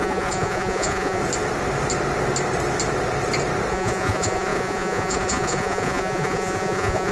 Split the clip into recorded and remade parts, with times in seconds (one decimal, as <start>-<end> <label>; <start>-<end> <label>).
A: 0.0-1.2 remade; 1.2-3.7 recorded; 3.7-7.1 remade